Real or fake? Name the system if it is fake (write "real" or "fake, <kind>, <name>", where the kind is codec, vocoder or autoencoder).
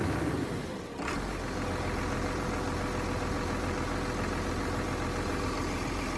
real